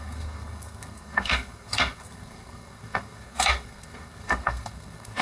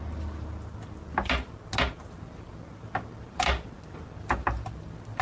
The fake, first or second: first